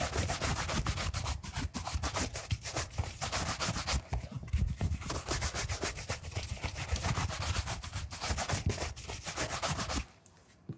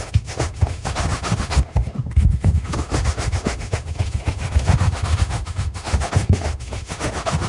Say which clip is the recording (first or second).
first